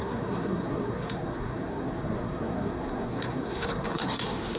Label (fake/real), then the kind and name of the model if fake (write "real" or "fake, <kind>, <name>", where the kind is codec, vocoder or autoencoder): fake, codec, SNAC